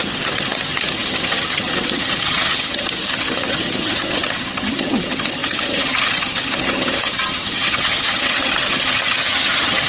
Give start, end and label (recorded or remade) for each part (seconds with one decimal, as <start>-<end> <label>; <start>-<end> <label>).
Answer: 0.0-9.9 remade